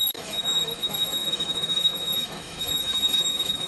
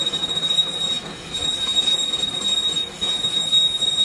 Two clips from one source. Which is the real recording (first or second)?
second